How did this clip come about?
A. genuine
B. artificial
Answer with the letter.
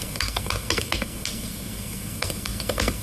B